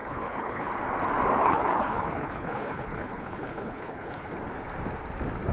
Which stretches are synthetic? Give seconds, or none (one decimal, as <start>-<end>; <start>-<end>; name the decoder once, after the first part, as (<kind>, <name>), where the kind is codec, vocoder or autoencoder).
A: 0.0-0.7 (codec, HILCodec); 1.4-4.3